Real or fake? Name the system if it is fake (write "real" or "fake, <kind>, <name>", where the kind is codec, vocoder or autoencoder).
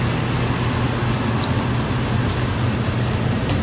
real